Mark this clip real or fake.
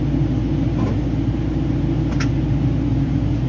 real